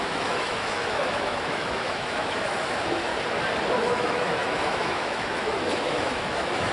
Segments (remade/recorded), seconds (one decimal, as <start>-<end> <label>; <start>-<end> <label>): 0.0-3.1 remade; 3.1-3.8 recorded; 3.8-6.7 remade